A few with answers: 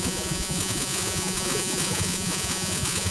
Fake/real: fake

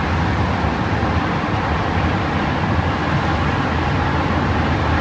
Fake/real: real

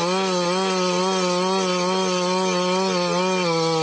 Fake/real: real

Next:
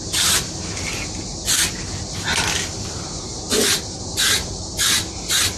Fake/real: real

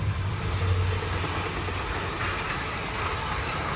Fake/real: real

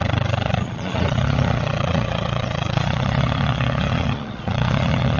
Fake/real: fake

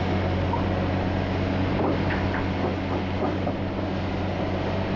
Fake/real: real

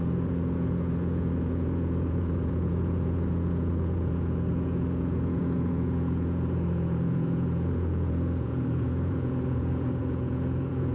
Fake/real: fake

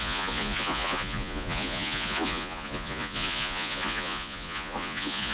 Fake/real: fake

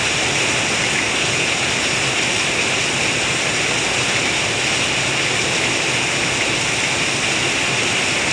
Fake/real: real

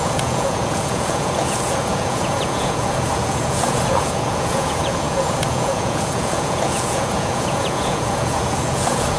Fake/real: fake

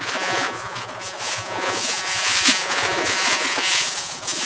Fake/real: fake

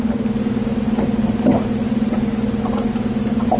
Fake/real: real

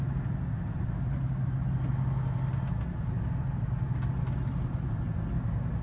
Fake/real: real